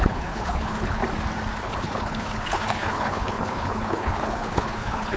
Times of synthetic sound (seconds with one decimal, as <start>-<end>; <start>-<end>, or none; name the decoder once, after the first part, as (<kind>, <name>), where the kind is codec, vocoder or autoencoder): 0.0-1.0 (codec, HILCodec); 1.6-5.2